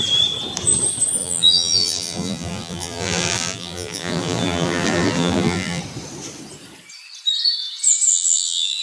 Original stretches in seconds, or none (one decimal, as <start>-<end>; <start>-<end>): 0.0-1.2; 5.8-8.1